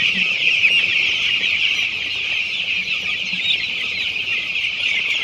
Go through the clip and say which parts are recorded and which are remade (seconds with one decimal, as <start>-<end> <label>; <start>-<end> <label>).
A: 0.0-4.3 recorded; 4.3-5.2 remade